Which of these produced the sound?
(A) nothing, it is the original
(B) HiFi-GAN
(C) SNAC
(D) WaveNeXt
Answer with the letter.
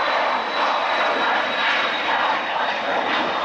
A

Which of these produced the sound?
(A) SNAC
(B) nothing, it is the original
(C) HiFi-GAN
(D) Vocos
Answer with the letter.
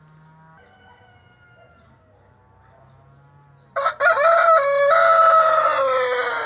B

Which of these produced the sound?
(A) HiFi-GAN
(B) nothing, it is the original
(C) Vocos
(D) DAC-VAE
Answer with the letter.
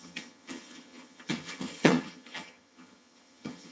A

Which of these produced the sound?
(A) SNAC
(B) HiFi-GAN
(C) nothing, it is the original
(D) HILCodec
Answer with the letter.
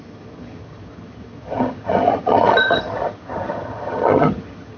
B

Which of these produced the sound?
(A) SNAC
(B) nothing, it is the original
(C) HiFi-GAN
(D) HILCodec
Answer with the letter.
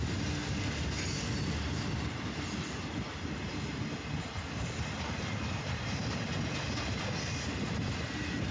B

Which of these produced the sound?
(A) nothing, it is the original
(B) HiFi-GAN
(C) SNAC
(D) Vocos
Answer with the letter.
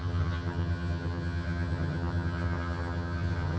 B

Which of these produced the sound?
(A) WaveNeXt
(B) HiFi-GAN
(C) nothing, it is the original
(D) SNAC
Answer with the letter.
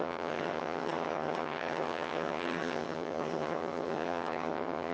B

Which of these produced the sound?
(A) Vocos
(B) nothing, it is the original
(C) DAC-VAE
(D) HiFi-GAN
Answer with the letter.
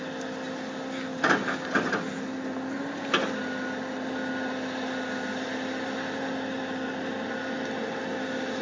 B